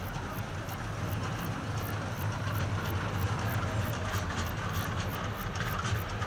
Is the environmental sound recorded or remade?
recorded